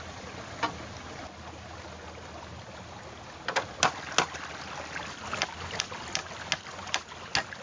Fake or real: real